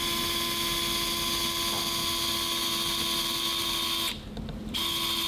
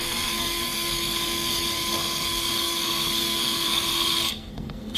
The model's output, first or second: second